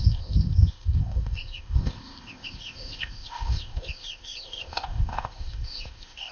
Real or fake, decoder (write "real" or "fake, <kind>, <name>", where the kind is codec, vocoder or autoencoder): fake, codec, ZipCodec